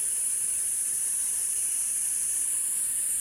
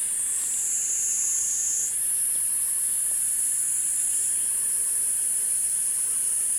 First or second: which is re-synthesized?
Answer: first